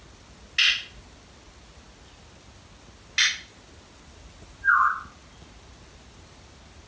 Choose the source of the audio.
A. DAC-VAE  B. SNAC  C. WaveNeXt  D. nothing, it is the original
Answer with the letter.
D